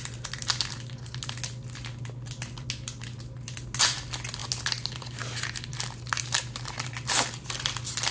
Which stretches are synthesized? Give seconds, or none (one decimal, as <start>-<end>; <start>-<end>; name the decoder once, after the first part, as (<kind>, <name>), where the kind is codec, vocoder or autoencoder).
none